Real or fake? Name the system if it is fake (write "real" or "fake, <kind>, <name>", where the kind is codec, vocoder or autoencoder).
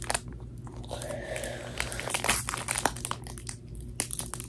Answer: real